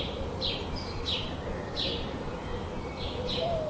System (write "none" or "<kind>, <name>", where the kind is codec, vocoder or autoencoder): none